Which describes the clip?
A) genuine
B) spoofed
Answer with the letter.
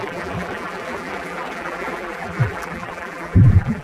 B